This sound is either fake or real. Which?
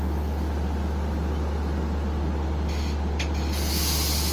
real